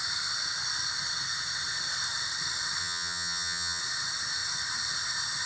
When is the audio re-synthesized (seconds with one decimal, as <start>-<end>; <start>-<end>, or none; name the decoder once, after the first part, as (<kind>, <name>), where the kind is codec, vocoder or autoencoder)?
2.8-3.8 (vocoder, HiFi-GAN)